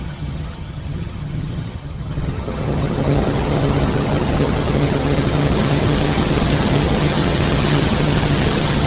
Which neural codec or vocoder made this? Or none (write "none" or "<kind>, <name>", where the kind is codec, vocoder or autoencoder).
vocoder, HiFi-GAN